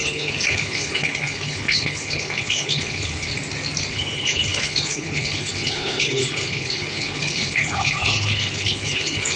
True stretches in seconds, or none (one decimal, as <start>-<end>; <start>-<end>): 3.3-3.9